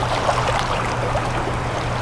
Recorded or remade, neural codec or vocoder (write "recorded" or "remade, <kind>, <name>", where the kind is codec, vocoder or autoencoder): recorded